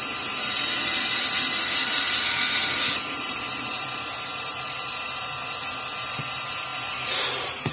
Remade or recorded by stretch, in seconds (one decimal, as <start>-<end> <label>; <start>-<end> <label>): 0.0-7.7 remade